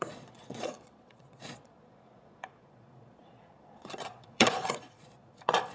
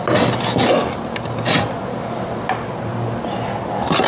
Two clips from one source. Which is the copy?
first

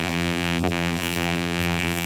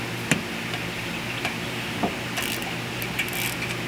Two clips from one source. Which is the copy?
first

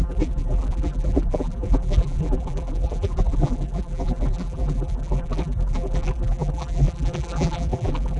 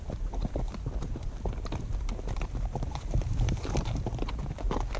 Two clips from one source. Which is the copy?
first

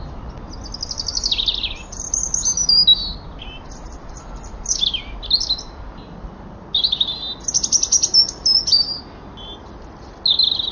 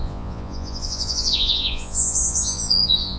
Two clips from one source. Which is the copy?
second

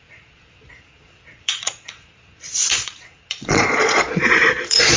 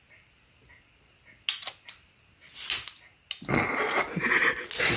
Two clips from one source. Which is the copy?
first